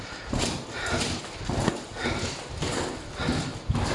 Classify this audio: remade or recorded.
recorded